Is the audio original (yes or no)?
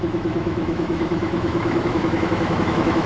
no